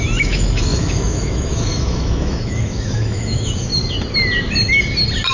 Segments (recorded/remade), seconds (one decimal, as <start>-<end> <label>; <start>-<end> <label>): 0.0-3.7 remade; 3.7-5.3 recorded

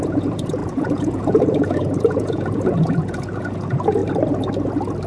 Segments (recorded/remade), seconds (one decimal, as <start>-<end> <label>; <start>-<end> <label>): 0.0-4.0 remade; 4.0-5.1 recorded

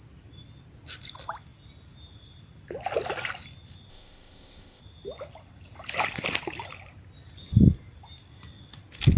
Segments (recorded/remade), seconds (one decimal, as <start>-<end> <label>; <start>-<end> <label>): 0.0-3.9 recorded; 3.9-4.8 remade; 4.8-9.2 recorded